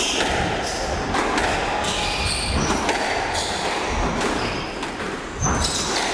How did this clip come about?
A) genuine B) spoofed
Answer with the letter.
A